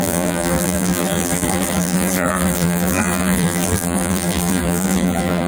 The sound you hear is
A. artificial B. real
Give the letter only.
A